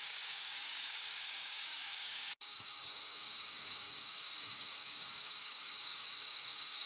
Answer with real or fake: fake